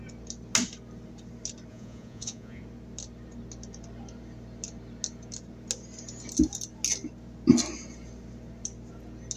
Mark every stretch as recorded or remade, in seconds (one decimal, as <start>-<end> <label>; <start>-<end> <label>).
0.0-1.7 recorded; 1.7-2.6 remade; 2.6-9.4 recorded